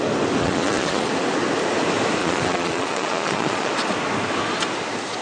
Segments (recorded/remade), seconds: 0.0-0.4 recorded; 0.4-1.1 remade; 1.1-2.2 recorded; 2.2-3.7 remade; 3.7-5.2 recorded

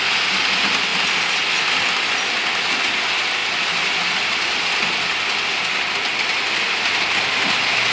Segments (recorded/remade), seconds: 0.0-7.9 recorded